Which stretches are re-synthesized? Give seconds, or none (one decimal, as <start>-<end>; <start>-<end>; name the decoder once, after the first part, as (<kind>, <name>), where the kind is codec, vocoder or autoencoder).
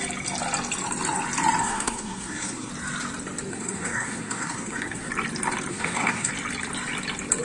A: 1.6-2.7 (codec, SNAC); 3.5-5.1; 5.7-6.3